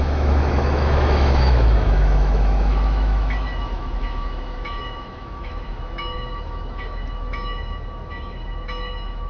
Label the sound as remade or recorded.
remade